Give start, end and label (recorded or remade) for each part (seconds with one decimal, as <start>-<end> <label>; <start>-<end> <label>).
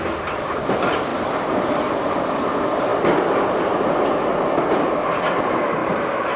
0.0-1.1 recorded; 1.1-1.9 remade; 1.9-2.9 recorded; 2.9-3.9 remade; 3.9-6.4 recorded